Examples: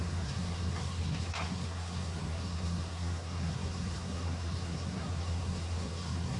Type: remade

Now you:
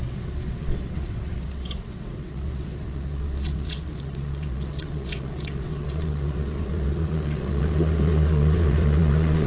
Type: remade